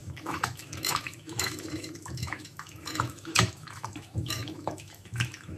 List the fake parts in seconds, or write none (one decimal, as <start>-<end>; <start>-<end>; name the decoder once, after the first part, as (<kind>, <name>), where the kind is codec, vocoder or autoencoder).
0.0-5.6 (autoencoder, DAC-VAE)